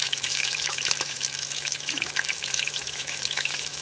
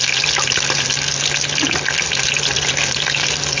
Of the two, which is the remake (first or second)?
first